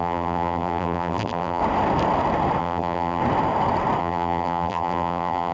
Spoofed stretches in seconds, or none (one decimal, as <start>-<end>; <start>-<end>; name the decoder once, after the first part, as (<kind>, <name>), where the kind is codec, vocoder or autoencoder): 0.0-1.6 (vocoder, BigVGAN v2); 2.6-3.2; 4.0-5.5

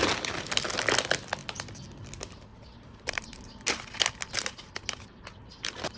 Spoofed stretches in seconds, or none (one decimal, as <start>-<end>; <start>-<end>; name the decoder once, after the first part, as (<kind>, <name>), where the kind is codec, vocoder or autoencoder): 2.5-3.4 (vocoder, BigVGAN v2)